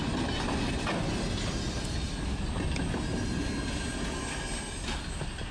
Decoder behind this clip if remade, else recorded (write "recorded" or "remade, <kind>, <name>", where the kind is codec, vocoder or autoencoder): recorded